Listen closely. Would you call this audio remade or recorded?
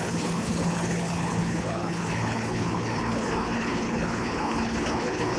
remade